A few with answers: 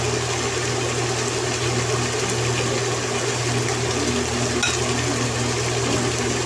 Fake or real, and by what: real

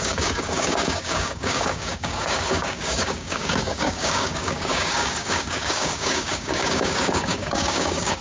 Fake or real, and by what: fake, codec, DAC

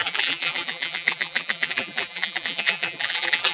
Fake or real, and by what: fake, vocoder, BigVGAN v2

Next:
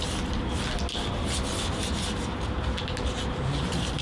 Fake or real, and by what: real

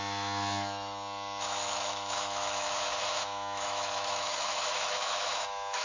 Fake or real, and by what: fake, autoencoder, DAC-VAE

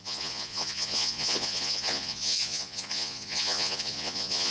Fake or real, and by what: fake, vocoder, Vocos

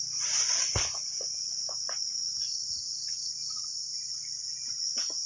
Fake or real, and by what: real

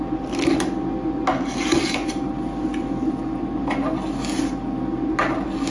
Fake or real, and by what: real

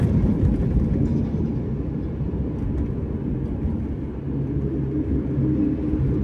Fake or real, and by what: real